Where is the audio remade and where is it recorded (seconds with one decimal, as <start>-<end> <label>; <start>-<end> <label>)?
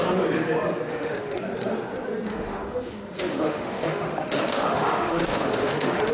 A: 0.0-0.9 recorded; 0.9-1.4 remade; 1.4-2.3 recorded; 2.3-6.1 remade